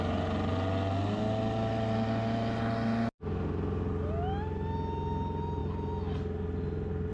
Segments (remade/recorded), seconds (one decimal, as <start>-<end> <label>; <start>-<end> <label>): 0.0-7.1 recorded